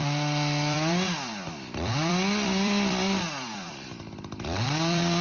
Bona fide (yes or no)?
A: no